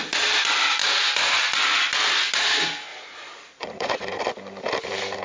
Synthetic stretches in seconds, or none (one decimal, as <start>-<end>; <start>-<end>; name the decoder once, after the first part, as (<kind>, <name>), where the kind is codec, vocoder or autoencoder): 2.9-4.2 (vocoder, Vocos)